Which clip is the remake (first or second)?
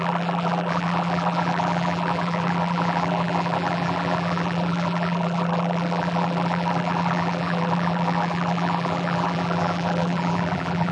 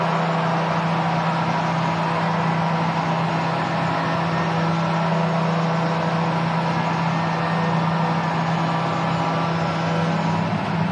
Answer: first